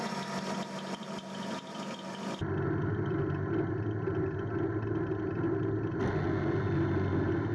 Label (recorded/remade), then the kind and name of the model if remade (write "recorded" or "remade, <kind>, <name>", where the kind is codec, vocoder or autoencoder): recorded